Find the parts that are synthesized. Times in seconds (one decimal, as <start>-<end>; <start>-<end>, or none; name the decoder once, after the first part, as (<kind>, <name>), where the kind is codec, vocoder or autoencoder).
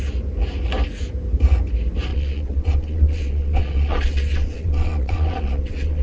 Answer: 2.1-6.0 (vocoder, WaveNeXt)